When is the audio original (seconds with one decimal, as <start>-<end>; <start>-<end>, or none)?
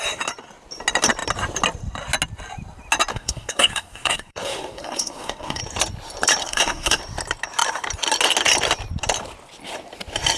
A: 0.0-3.1; 5.6-6.4; 7.0-10.4